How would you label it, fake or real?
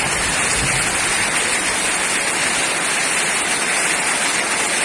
real